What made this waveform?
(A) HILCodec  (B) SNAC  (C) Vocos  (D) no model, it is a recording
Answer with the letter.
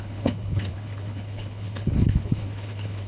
A